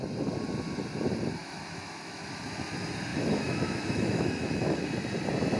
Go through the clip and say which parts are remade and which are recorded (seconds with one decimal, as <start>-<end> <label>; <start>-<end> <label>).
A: 0.0-1.4 recorded; 1.4-2.2 remade; 2.2-3.1 recorded; 3.1-4.9 remade; 4.9-5.6 recorded